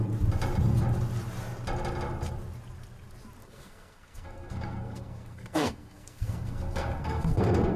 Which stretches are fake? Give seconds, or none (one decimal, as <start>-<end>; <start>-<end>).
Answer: 3.4-7.8